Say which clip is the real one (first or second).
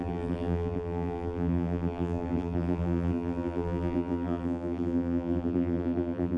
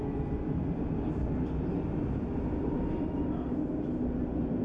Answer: second